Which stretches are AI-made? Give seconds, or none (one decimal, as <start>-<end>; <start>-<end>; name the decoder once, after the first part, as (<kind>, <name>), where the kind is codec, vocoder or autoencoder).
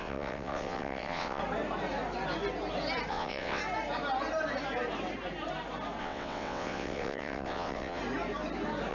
0.0-1.4 (vocoder, WaveNeXt); 3.1-3.6; 6.0-8.0